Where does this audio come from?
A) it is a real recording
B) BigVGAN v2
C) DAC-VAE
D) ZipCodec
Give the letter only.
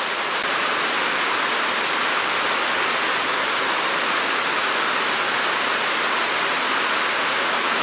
A